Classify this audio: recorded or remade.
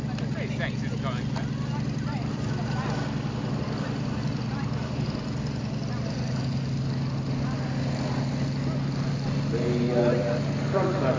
recorded